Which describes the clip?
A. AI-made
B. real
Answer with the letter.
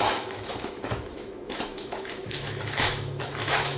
A